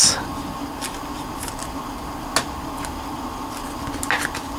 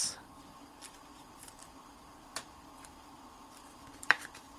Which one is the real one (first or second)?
first